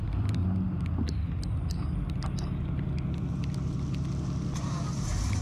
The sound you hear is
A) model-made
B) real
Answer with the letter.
B